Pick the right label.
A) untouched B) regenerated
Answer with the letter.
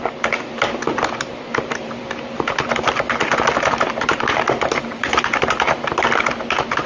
A